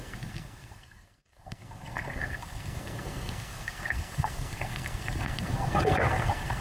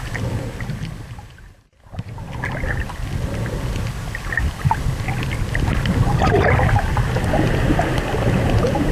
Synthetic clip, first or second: first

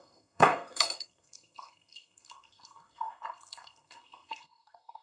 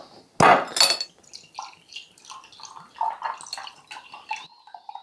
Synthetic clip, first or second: first